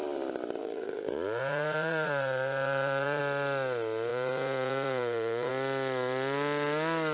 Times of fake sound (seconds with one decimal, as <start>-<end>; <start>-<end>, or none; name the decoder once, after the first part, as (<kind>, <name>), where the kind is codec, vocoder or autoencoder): 0.6-3.2 (vocoder, Vocos); 4.1-5.5